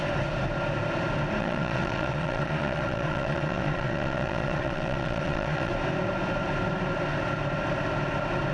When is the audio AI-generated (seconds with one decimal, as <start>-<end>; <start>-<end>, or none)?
1.4-5.7